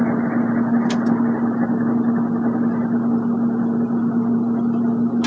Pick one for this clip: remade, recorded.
recorded